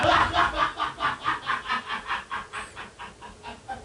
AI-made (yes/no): no